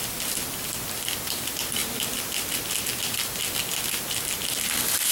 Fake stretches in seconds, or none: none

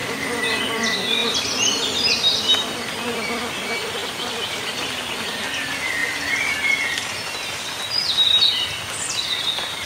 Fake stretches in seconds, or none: 0.0-0.6 (vocoder, BigVGAN v2); 1.2-2.1; 4.0-5.0; 6.0-6.5

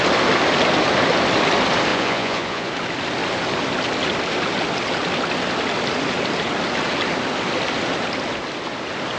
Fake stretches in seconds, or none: 1.9-2.7 (vocoder, Vocos)